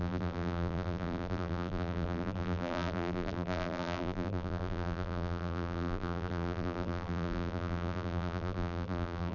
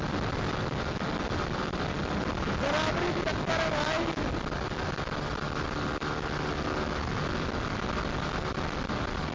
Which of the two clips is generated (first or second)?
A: first